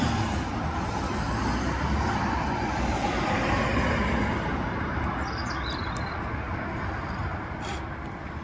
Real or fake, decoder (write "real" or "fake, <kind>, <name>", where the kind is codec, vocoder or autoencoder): real